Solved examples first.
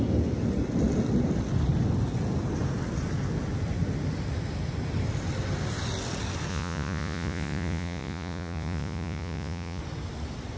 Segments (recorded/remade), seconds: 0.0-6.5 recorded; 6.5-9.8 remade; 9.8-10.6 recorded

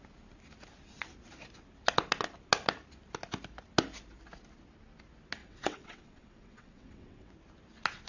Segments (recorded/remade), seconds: 0.0-5.4 recorded; 5.4-7.3 remade; 7.3-8.1 recorded

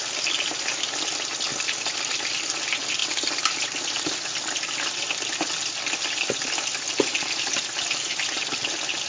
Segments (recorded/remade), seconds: 0.0-9.1 recorded

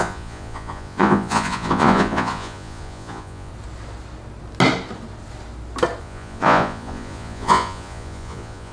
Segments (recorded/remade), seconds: 0.0-3.5 remade; 3.5-6.0 recorded; 6.0-8.7 remade

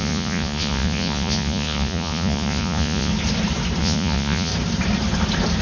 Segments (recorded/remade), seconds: 0.0-3.1 remade; 3.1-3.8 recorded; 3.8-4.5 remade; 4.5-5.6 recorded

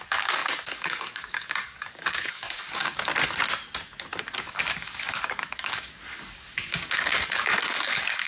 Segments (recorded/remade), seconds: 0.0-3.1 remade; 3.1-4.3 recorded; 4.3-8.3 remade

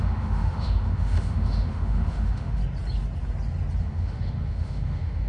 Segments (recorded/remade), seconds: 0.0-2.6 remade; 2.6-3.8 recorded; 3.8-5.3 remade

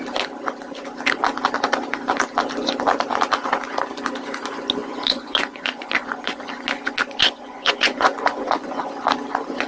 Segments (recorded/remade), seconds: 0.0-4.8 recorded; 4.8-6.4 remade; 6.4-7.2 recorded; 7.2-8.8 remade; 8.8-9.7 recorded